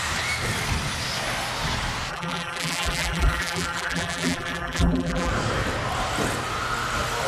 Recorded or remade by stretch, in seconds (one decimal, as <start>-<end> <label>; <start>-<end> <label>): 0.0-2.1 recorded; 2.1-5.3 remade; 5.3-7.3 recorded